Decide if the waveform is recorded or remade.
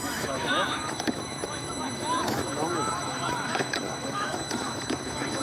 remade